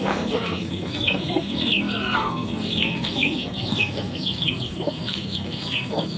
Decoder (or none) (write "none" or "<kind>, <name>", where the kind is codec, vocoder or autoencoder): codec, SNAC